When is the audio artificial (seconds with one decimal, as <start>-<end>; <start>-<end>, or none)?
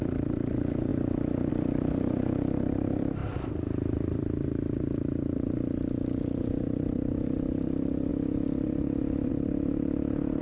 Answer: 0.0-8.1; 9.3-10.4